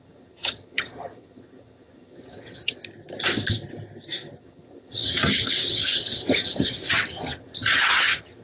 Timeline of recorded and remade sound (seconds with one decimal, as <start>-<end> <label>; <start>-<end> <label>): 0.0-2.8 remade; 2.8-4.4 recorded; 4.4-8.4 remade